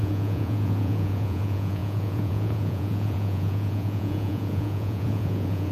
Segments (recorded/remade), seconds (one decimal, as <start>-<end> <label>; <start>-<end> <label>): 0.0-5.7 remade